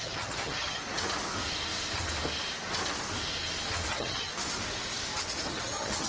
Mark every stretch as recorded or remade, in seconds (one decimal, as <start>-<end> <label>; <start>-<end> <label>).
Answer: 0.0-0.8 remade; 0.8-3.9 recorded; 3.9-4.3 remade; 4.3-5.5 recorded; 5.5-6.1 remade